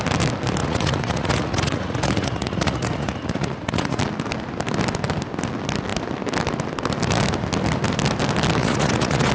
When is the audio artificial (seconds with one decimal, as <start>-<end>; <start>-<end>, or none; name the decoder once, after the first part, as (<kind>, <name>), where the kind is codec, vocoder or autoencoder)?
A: 0.6-4.0 (vocoder, Vocos); 8.6-9.3